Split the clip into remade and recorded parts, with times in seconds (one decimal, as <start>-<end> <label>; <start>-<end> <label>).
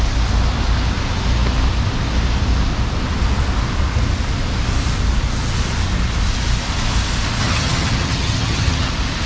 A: 0.0-7.4 recorded; 7.4-8.9 remade; 8.9-9.3 recorded